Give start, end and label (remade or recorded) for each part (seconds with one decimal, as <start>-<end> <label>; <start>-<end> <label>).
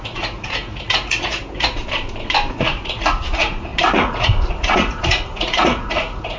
0.0-1.8 remade; 1.8-2.5 recorded; 2.5-6.4 remade